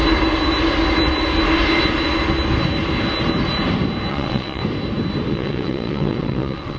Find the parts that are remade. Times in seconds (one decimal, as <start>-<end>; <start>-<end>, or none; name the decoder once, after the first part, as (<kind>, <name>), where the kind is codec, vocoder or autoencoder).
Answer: 4.1-4.6 (vocoder, WaveNeXt); 5.3-6.8